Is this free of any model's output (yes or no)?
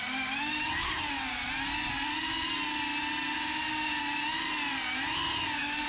yes